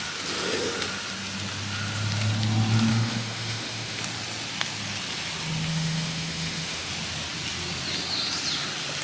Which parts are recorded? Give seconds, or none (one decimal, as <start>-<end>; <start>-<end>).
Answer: 0.0-2.9; 4.0-5.7; 6.9-9.0